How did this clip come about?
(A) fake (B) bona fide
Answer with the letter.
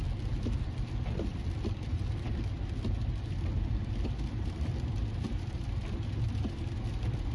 A